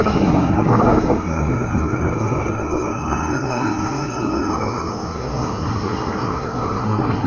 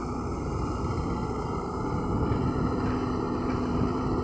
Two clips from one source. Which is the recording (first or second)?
second